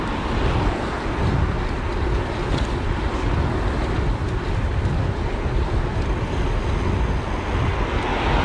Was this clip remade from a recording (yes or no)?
no